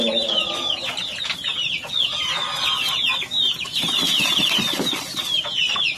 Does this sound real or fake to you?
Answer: real